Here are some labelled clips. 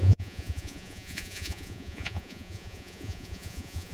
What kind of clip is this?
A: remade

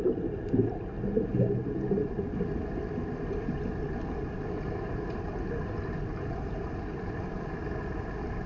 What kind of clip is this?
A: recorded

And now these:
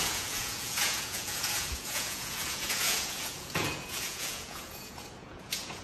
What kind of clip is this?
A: remade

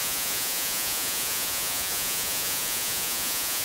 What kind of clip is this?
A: remade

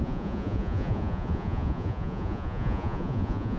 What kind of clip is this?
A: remade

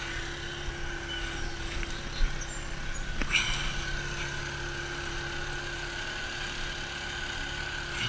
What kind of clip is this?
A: recorded